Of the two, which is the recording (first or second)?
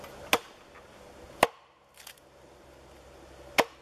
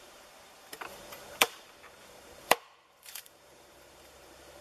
first